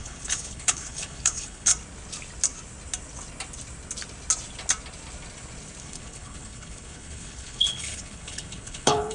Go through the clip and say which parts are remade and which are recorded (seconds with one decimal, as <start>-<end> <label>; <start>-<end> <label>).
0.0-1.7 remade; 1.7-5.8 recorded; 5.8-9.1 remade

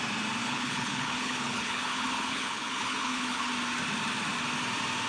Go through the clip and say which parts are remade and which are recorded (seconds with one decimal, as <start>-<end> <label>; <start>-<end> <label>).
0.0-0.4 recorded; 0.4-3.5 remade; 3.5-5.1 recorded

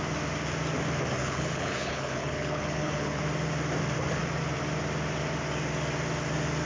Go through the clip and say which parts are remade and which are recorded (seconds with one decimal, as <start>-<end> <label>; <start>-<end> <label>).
0.0-1.2 recorded; 1.2-3.2 remade; 3.2-6.7 recorded

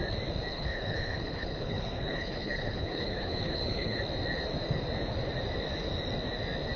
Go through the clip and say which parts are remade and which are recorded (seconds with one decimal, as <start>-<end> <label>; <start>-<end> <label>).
0.0-0.5 recorded; 0.5-4.0 remade; 4.0-6.8 recorded

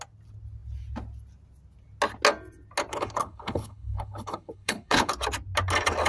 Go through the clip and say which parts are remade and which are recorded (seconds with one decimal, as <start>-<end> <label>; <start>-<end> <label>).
0.0-2.9 recorded; 2.9-5.1 remade; 5.1-6.1 recorded